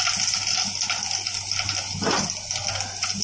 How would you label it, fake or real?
real